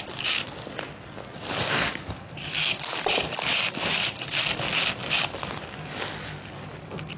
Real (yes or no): yes